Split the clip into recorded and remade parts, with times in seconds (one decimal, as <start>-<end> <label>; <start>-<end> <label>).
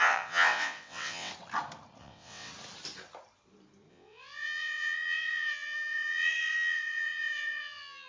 0.0-1.3 remade; 1.3-2.0 recorded; 2.0-2.5 remade; 2.5-3.9 recorded; 3.9-8.1 remade